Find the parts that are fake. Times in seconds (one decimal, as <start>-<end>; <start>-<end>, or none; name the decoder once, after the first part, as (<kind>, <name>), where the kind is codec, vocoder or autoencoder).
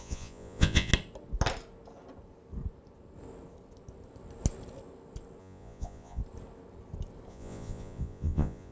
0.0-0.9 (vocoder, Vocos); 5.4-6.2; 7.3-8.7